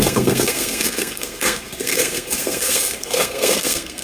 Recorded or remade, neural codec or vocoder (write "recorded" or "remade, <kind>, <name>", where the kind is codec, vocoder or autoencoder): remade, codec, SNAC